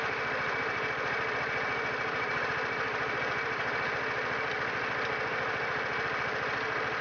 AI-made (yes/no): no